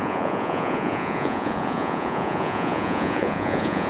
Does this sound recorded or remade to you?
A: remade